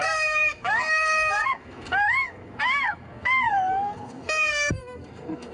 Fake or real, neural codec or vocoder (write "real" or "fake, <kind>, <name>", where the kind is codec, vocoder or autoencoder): fake, codec, SNAC